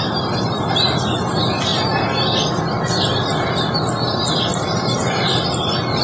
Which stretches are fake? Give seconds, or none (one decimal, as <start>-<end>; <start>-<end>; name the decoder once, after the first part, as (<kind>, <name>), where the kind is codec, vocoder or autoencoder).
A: none